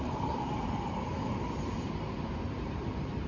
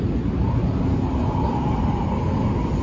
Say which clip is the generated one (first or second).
first